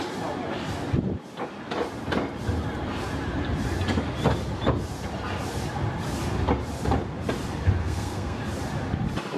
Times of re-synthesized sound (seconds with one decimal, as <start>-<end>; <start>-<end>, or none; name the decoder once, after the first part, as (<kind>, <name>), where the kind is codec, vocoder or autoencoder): 7.8-8.4 (codec, SNAC)